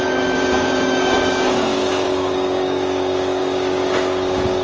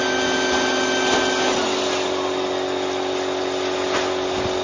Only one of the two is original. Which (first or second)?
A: second